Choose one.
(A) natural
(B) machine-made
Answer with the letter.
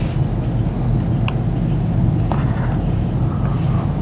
A